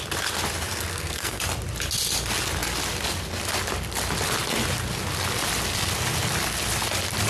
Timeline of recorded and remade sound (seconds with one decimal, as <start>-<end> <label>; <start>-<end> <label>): 0.0-0.9 recorded; 0.9-1.4 remade; 1.4-7.3 recorded